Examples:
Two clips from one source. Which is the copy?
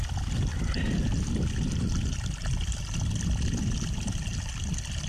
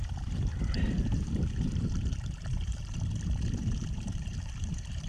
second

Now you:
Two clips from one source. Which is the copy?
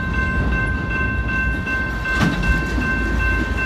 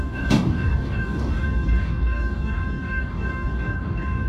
second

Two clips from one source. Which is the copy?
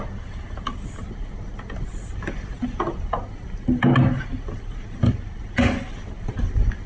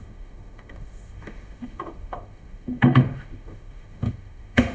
second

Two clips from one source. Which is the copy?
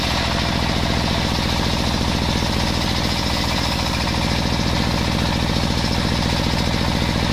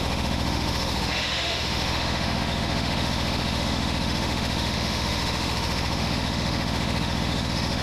second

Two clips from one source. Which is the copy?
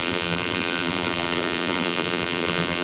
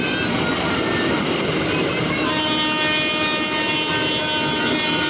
first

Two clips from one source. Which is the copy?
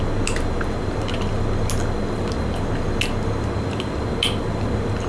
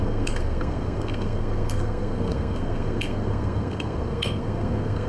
second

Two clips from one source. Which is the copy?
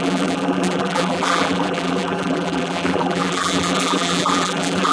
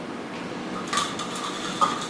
first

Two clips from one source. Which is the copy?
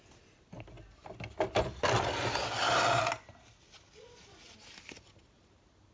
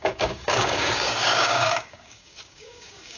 second